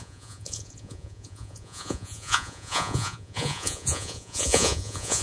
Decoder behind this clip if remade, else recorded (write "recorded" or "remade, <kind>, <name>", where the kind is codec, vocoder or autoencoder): remade, vocoder, Vocos